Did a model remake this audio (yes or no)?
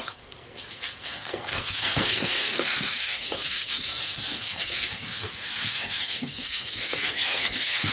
yes